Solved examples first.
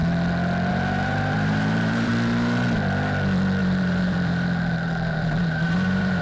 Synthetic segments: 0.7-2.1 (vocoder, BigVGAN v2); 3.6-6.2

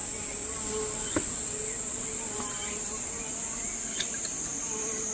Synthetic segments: none

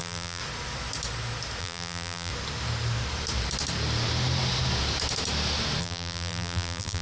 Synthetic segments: 0.0-0.4 (vocoder, BigVGAN v2); 1.6-2.3; 5.8-7.0

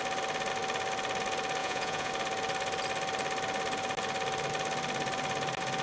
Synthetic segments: 1.6-2.1 (vocoder, Vocos)

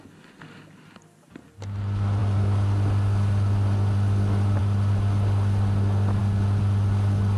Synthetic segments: none

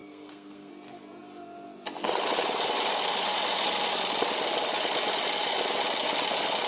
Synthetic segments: 0.0-0.7 (codec, SNAC)

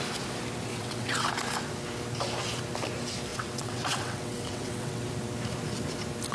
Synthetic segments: 0.7-1.3 (vocoder, WaveNeXt); 3.3-5.0